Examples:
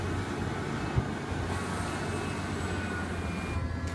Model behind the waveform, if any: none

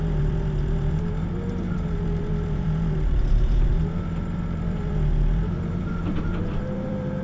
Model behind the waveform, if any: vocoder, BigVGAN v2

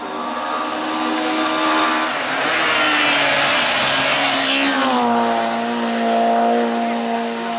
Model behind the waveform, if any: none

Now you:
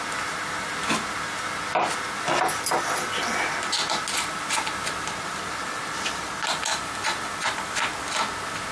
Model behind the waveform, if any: none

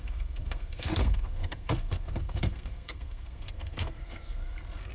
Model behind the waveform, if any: codec, SNAC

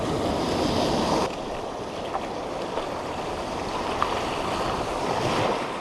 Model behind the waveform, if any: none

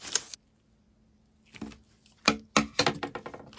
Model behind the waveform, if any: none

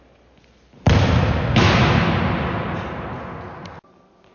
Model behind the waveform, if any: none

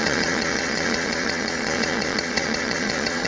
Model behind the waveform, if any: vocoder, Vocos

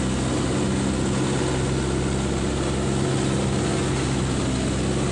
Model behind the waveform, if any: none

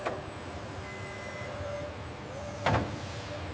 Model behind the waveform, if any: none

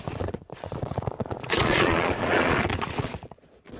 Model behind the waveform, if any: vocoder, Vocos